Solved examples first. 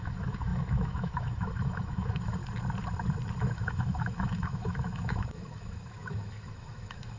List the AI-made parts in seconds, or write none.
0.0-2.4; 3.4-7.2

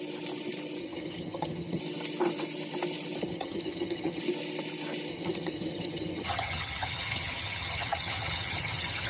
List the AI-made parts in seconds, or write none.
0.8-1.8; 3.2-4.2; 5.1-9.1

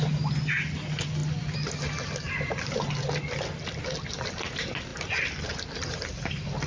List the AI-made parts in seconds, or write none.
none